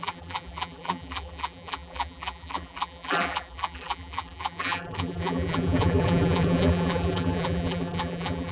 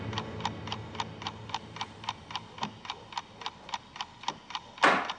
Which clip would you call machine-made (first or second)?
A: first